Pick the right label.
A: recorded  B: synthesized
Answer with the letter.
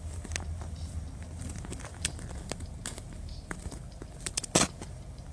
A